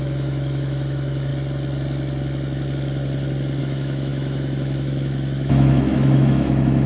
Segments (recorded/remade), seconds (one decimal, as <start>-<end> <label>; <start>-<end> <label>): 0.0-1.3 remade; 1.3-3.6 recorded; 3.6-6.9 remade